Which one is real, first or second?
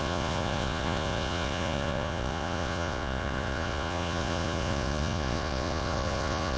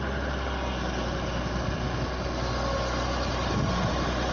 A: second